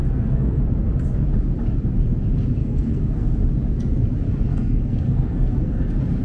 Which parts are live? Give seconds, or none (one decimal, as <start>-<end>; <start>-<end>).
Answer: 0.6-2.6; 3.3-4.5; 5.8-6.2